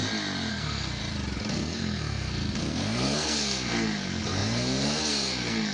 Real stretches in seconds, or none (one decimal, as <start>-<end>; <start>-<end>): 0.0-0.5; 1.0-1.5